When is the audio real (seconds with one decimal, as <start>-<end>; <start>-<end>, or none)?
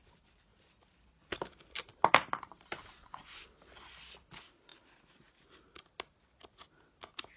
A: 0.0-2.8; 3.3-7.4